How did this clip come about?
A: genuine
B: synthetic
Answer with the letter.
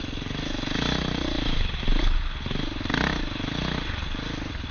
A